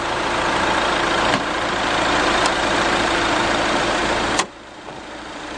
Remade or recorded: remade